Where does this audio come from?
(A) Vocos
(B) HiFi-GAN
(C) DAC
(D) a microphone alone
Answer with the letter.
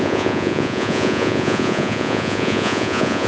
A